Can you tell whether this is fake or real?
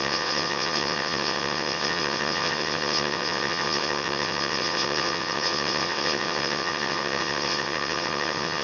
fake